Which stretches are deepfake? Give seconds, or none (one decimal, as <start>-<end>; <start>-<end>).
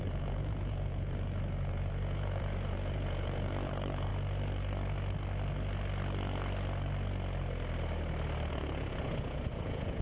0.0-4.1; 8.5-10.0